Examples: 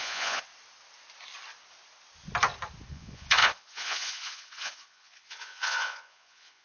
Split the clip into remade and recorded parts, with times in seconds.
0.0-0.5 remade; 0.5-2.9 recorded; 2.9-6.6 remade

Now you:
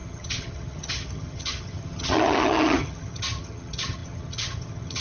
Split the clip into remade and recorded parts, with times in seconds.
0.0-5.0 remade

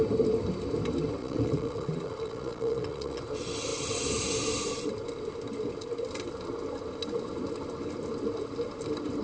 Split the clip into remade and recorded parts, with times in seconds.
0.0-1.2 recorded; 1.2-3.2 remade; 3.2-9.2 recorded

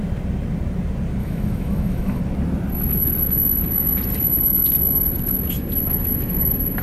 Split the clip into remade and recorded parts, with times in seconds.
0.0-1.2 recorded; 1.2-2.2 remade; 2.2-6.8 recorded

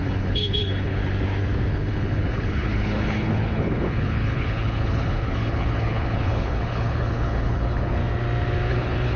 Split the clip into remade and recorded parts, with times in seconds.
0.0-1.0 remade; 1.0-1.7 recorded; 1.7-8.0 remade; 8.0-8.7 recorded; 8.7-9.2 remade

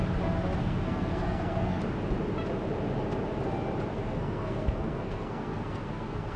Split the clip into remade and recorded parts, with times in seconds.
0.0-0.6 recorded; 0.6-1.8 remade; 1.8-3.9 recorded; 3.9-6.4 remade

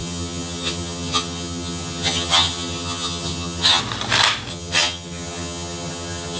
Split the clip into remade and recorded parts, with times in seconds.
0.0-3.8 remade; 3.8-4.5 recorded; 4.5-6.4 remade